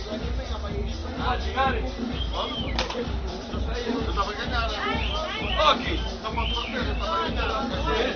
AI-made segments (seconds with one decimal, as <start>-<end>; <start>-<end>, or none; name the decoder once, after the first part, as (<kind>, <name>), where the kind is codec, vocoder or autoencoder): 1.0-5.5 (vocoder, BigVGAN v2); 6.7-7.5